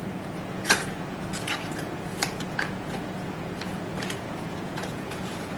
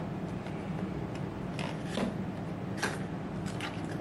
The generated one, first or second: first